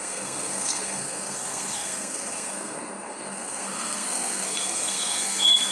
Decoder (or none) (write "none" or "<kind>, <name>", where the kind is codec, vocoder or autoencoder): codec, SNAC